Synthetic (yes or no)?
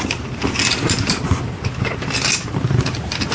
no